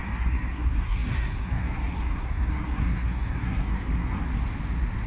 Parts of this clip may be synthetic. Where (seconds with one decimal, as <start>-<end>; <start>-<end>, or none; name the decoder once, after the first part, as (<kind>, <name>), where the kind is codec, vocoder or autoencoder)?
0.0-4.2 (codec, SNAC)